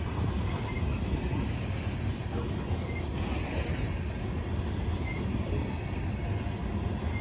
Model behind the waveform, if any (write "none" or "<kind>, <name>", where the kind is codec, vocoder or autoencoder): none